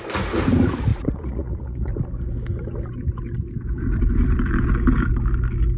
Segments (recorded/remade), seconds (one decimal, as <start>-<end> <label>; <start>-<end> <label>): 0.0-0.9 recorded; 0.9-1.9 remade; 1.9-5.8 recorded